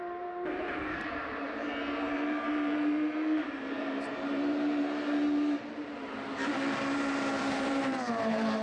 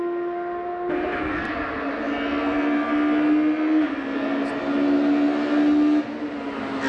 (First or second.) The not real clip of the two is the first